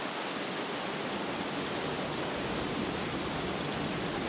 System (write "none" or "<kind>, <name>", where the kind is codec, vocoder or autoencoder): none